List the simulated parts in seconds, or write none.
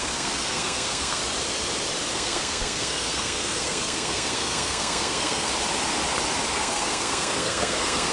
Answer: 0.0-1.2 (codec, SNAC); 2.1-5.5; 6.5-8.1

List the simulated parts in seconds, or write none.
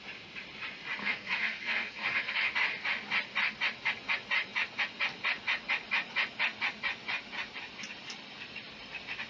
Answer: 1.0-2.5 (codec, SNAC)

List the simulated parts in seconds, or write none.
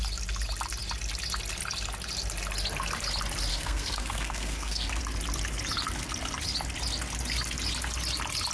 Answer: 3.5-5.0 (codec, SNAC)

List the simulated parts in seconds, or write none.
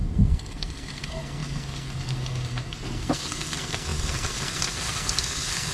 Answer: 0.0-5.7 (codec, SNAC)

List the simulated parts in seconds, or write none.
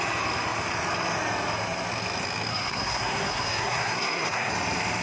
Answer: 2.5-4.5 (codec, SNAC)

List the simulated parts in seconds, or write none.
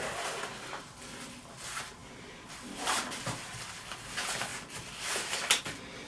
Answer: none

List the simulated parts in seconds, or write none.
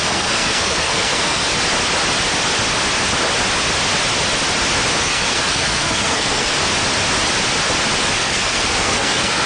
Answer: 0.0-1.4 (codec, SNAC); 5.0-6.6; 8.0-9.5